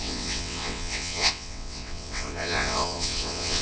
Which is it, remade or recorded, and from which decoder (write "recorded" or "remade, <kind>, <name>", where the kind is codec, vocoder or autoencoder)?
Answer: remade, vocoder, WaveNeXt